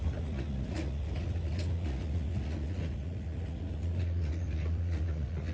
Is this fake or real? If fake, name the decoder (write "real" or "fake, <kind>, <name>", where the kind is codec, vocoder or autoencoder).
fake, vocoder, Vocos